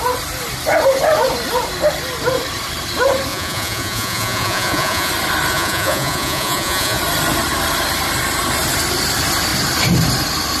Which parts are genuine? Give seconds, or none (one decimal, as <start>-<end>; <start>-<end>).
0.0-3.3; 5.1-5.5; 7.0-10.6